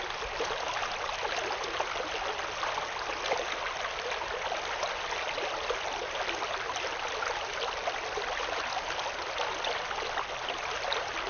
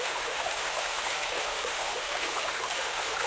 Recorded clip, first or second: first